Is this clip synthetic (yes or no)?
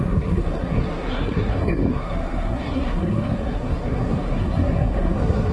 yes